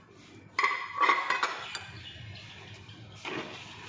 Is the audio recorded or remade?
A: recorded